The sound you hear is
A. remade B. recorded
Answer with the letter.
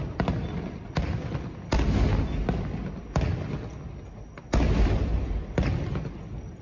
B